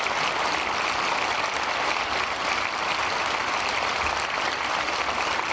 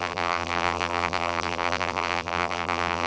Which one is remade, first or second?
second